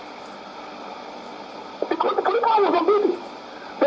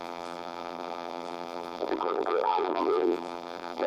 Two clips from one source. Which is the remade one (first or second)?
second